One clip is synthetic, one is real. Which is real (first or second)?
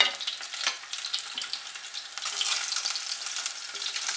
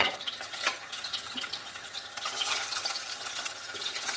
first